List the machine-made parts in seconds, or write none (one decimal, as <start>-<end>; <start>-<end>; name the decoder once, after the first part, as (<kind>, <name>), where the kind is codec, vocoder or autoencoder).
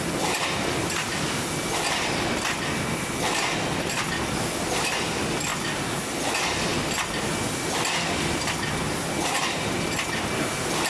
none